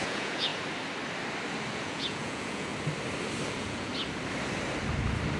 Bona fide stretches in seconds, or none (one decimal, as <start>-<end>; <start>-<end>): 0.5-1.7; 2.7-3.5; 3.9-5.4